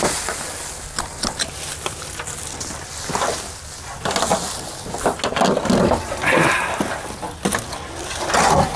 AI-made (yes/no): no